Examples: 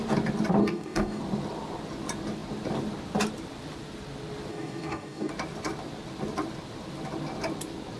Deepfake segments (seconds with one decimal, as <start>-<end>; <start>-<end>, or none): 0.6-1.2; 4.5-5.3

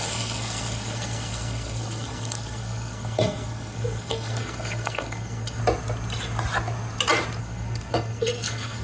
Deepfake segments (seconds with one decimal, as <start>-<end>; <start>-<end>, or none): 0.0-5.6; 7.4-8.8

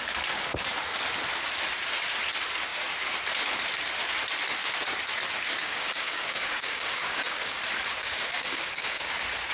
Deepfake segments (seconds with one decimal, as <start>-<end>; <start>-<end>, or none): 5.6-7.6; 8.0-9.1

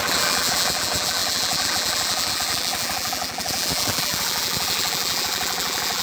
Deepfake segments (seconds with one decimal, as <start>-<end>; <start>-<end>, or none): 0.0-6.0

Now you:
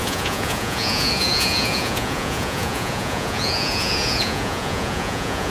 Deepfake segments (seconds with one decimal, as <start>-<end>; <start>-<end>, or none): 0.0-5.5

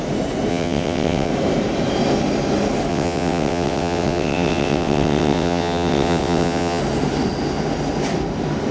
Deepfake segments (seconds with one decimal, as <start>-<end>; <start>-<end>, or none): 0.5-1.3; 2.9-6.8

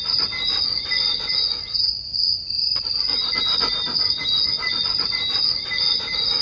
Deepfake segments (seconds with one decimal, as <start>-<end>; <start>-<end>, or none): none